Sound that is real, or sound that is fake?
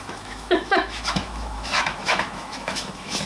fake